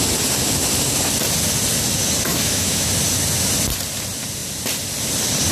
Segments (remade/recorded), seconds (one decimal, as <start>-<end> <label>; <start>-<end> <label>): 0.0-2.3 recorded; 2.3-2.9 remade; 2.9-5.5 recorded